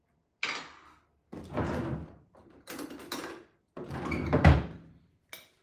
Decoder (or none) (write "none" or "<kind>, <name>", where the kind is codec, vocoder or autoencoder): none